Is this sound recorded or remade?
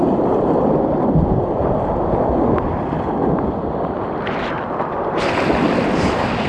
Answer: recorded